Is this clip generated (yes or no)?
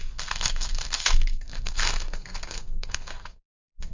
yes